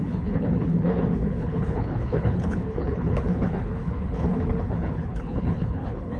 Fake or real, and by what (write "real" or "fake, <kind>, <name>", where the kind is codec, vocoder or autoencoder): fake, codec, HILCodec